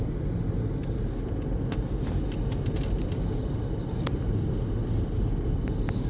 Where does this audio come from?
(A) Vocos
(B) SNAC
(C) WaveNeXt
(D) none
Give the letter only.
D